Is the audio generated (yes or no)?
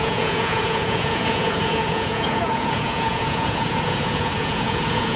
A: yes